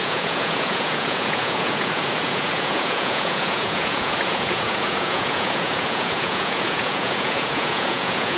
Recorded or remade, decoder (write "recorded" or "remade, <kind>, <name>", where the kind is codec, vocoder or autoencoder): remade, vocoder, Vocos